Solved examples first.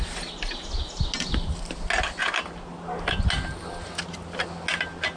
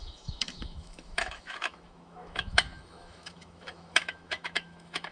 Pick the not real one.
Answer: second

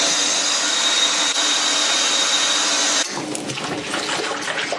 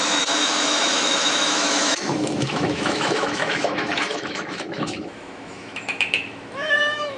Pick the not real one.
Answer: second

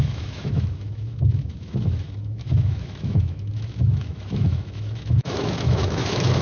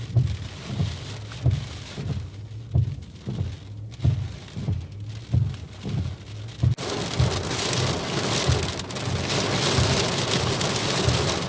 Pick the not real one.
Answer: first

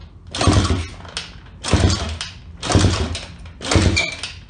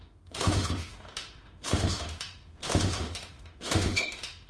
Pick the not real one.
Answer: second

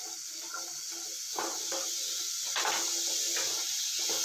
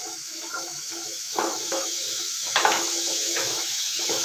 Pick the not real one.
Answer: second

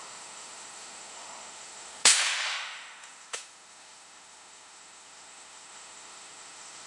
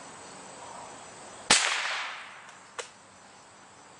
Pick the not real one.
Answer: first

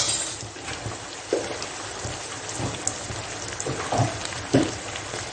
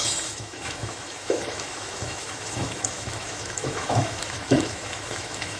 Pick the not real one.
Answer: second